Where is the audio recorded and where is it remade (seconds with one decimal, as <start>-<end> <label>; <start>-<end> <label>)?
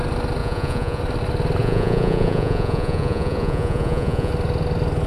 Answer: 0.0-0.4 recorded; 0.4-1.0 remade; 1.0-1.6 recorded; 1.6-4.3 remade; 4.3-5.1 recorded